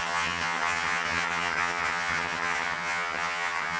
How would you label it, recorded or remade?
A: remade